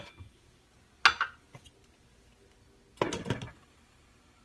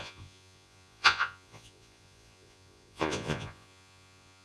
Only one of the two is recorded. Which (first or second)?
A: first